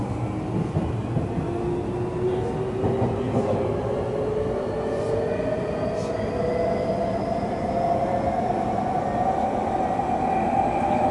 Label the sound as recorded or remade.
remade